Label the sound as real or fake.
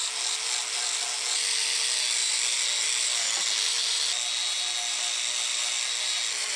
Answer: real